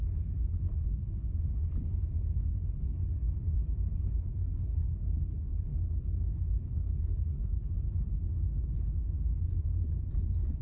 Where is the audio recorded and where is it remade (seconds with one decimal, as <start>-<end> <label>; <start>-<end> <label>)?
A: 0.0-1.0 remade; 1.0-2.4 recorded; 2.4-3.1 remade; 3.1-3.9 recorded; 3.9-7.6 remade; 7.6-10.1 recorded; 10.1-10.6 remade